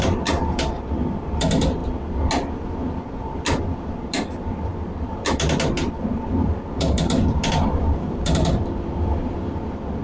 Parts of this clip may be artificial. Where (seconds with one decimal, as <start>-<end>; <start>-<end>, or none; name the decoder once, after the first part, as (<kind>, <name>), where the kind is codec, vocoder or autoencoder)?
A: 0.0-1.8 (vocoder, BigVGAN v2); 2.5-10.0